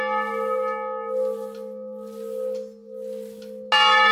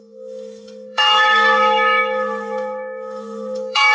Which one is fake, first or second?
second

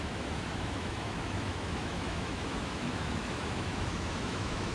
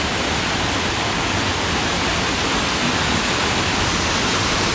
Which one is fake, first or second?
first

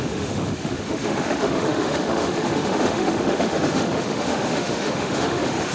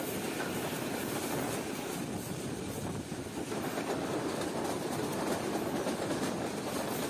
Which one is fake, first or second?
first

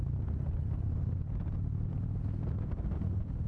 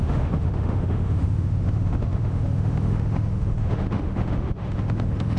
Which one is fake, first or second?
second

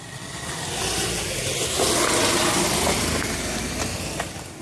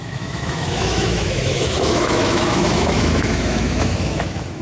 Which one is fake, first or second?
second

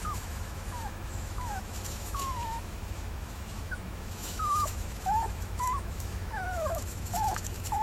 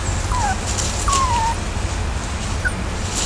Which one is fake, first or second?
first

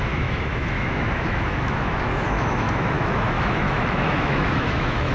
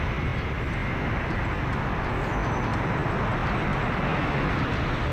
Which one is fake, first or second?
first